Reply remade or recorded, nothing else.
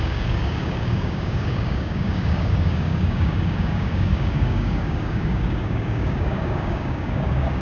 remade